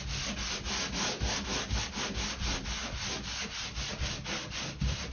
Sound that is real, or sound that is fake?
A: real